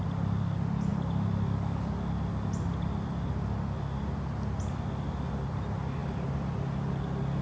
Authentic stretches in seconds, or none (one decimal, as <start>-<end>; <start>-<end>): 0.0-7.4